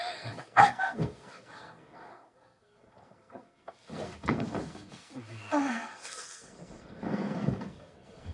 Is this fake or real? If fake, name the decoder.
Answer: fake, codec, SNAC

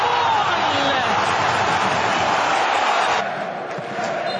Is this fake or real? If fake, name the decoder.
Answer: real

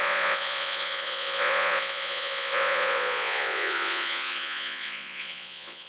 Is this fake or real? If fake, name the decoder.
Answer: fake, vocoder, Vocos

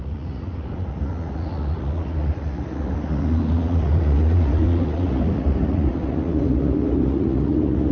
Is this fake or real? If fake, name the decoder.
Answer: fake, vocoder, Vocos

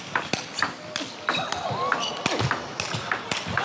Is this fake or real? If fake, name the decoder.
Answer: real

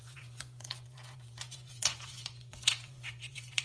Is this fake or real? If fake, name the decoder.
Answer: fake, vocoder, Vocos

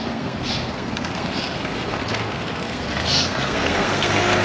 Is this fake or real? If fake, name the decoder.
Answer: fake, codec, SNAC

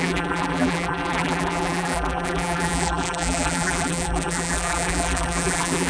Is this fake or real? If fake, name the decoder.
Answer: fake, vocoder, BigVGAN v2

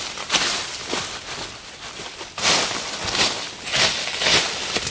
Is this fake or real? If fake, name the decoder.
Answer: real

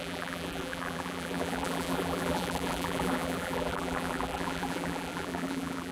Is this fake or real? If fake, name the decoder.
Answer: fake, vocoder, BigVGAN v2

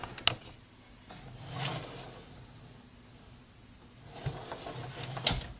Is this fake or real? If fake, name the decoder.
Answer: real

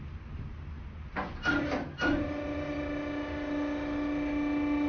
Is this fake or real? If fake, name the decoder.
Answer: real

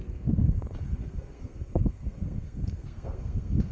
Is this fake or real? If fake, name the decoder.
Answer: fake, codec, SNAC